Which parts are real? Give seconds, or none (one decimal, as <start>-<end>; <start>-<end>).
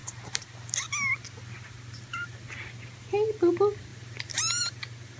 0.0-5.2